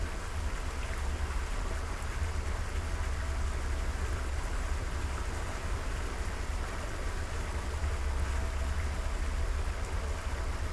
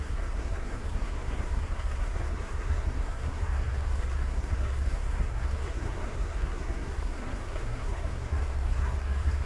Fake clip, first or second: second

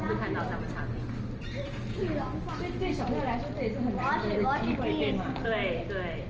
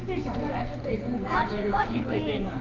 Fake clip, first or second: second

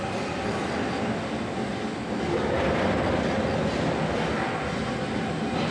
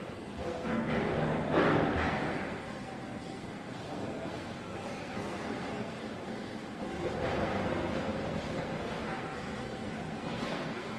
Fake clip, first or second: second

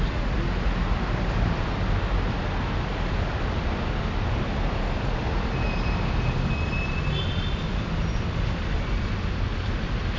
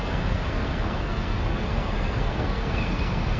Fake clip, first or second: second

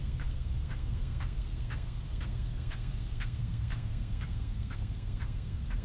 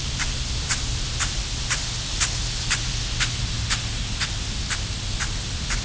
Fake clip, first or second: first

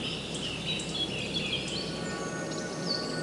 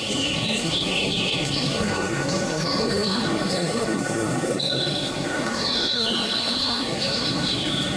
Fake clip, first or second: second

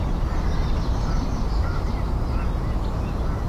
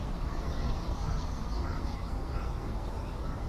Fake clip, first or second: second